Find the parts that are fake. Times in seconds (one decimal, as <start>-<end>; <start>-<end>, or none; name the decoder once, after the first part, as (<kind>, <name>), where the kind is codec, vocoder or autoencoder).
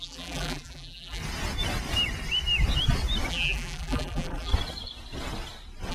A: 0.0-1.2 (vocoder, BigVGAN v2); 3.3-4.5